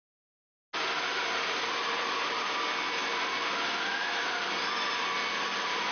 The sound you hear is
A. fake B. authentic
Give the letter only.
B